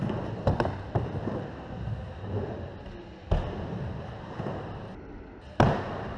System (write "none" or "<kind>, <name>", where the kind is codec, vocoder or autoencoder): none